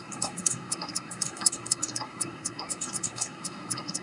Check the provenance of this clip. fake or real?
fake